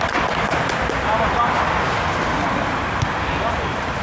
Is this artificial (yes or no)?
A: no